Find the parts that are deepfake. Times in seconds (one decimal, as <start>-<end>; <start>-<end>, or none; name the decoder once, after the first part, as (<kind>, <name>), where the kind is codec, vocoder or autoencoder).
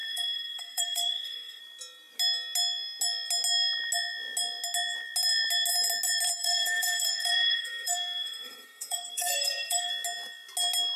0.0-1.6 (codec, SNAC); 6.4-9.9